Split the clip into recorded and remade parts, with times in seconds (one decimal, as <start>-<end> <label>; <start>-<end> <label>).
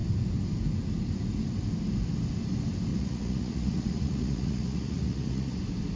0.0-2.9 recorded; 2.9-5.6 remade; 5.6-6.0 recorded